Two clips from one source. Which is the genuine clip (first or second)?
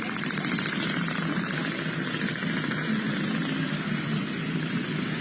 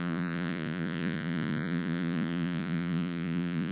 first